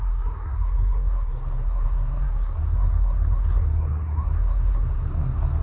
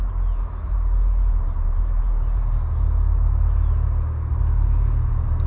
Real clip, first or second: second